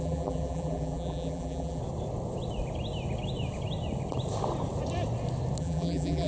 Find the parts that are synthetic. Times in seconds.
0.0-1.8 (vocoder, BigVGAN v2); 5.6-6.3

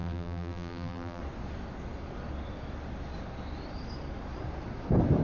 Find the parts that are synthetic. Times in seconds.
0.0-1.2 (vocoder, BigVGAN v2)

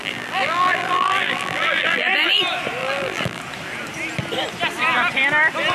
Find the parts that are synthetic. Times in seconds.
0.0-2.4 (vocoder, BigVGAN v2); 2.8-3.4